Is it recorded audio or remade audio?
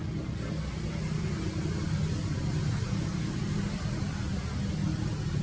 recorded